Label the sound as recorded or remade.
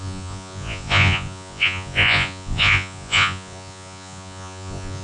remade